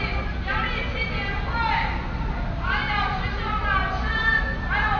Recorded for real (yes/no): yes